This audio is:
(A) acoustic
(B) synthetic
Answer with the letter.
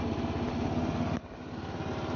A